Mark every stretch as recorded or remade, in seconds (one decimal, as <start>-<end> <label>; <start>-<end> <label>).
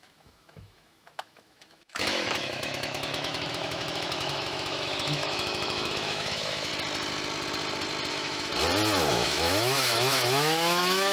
0.0-6.7 remade; 6.7-8.1 recorded; 8.1-8.5 remade; 8.5-9.1 recorded; 9.1-11.1 remade